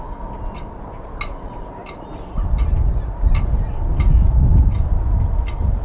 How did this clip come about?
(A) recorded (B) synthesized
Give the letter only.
A